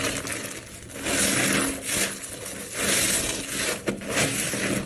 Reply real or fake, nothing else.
real